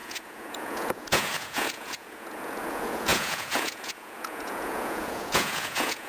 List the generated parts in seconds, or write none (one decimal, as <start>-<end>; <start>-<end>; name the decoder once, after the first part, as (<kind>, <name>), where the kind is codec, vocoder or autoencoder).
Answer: 0.0-6.1 (vocoder, Vocos)